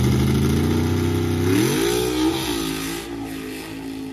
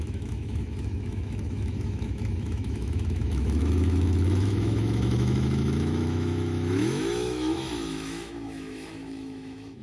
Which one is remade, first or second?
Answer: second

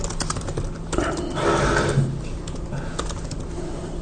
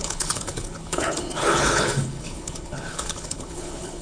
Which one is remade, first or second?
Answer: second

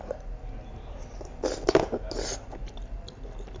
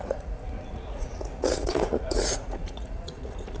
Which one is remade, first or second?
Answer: second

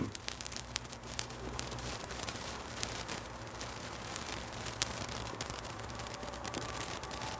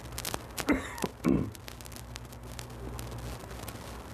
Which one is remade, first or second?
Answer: first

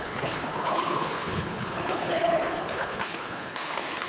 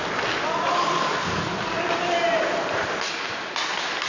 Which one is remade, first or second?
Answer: first